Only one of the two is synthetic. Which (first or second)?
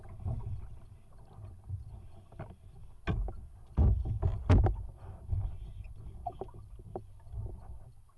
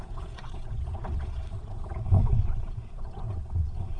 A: second